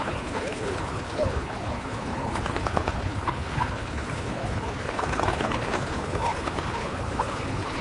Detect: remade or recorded remade